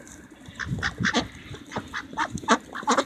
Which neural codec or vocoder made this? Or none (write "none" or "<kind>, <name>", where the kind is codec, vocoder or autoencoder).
vocoder, BigVGAN v2